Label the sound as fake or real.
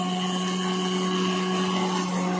real